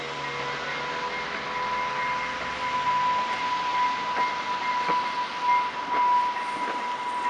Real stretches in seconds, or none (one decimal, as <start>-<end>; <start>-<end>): 0.0-7.3